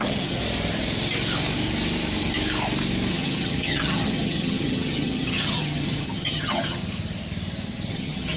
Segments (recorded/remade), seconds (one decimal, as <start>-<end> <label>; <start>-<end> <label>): 0.0-0.4 remade; 0.4-3.1 recorded; 3.1-6.8 remade; 6.8-7.9 recorded; 7.9-8.4 remade